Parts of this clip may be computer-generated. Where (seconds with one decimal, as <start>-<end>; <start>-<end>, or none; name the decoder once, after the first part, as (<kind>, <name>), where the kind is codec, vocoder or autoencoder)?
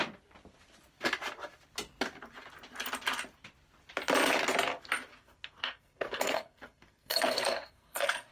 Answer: 5.1-8.3 (codec, SNAC)